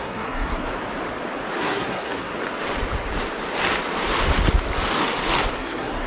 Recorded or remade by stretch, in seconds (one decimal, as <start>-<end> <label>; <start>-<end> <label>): 0.0-0.7 remade; 0.7-1.6 recorded; 1.6-2.3 remade; 2.3-5.5 recorded; 5.5-6.1 remade